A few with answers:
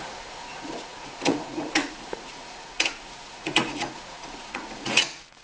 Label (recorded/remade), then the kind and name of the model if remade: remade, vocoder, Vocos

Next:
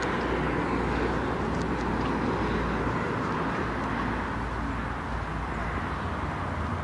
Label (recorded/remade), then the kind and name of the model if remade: recorded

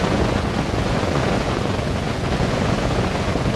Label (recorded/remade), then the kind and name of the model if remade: remade, vocoder, Vocos